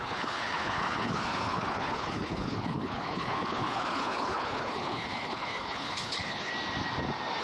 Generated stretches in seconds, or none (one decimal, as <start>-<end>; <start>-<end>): 0.0-6.5